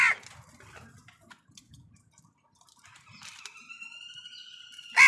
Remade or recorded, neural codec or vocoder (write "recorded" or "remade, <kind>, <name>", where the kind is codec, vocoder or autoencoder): recorded